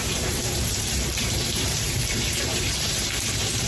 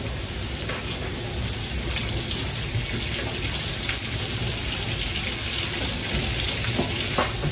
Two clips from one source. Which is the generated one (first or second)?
first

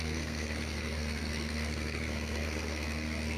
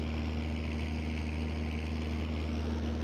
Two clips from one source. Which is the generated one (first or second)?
first